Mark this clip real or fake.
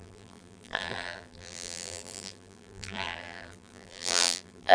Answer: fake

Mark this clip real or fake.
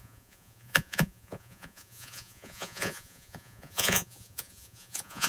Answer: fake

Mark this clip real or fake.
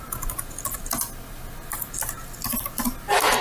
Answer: real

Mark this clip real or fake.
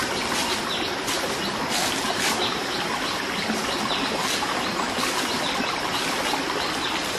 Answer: real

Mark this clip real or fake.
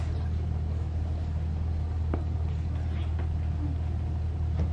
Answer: real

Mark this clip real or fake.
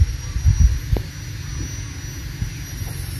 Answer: real